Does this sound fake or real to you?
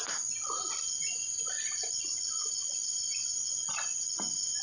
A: real